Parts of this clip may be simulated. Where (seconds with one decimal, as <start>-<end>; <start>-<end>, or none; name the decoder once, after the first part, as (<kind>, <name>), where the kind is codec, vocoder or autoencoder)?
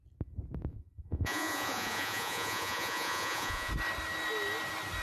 0.7-3.7 (vocoder, Vocos)